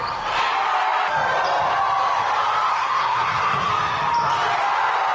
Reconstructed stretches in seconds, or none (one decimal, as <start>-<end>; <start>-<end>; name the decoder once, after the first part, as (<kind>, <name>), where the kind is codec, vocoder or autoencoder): 2.7-3.7 (codec, SNAC)